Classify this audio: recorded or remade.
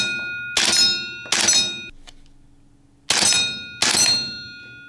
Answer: recorded